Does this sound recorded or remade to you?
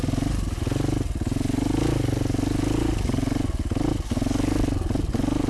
recorded